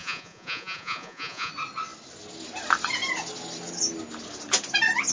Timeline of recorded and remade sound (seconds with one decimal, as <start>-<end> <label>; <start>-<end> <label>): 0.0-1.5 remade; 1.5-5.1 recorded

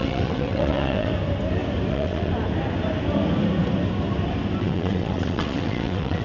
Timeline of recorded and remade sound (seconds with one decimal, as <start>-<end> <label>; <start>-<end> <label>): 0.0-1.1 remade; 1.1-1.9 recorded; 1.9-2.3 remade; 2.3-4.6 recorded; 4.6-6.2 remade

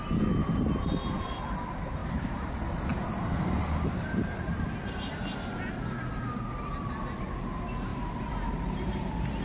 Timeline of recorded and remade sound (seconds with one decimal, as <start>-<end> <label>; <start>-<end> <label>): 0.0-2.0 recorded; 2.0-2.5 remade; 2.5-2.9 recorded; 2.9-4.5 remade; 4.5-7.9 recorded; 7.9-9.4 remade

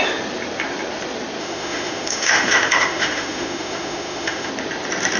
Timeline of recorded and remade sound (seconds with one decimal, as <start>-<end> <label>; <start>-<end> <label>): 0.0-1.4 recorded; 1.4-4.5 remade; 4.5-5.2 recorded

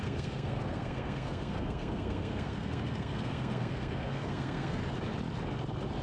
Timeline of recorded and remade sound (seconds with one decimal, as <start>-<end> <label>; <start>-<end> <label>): 0.0-4.8 remade; 4.8-6.0 recorded

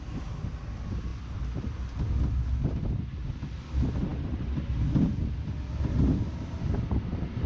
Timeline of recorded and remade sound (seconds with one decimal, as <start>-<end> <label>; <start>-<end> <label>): 0.0-7.5 recorded

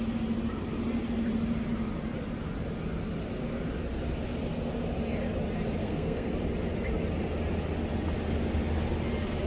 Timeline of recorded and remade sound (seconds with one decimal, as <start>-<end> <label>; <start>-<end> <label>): 0.0-5.8 recorded; 5.8-6.3 remade; 6.3-9.5 recorded